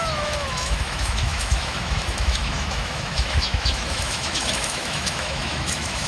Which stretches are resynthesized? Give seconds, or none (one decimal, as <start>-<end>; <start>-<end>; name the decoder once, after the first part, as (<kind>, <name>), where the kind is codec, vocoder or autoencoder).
0.0-6.1 (autoencoder, DAC-VAE)